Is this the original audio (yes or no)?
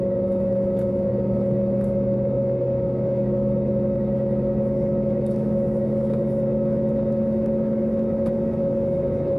no